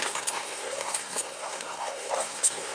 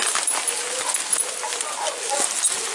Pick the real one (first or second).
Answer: second